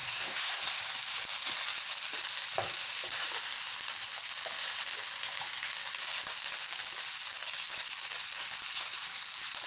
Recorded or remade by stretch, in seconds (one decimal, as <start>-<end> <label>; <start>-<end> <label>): 0.0-0.8 remade; 0.8-9.7 recorded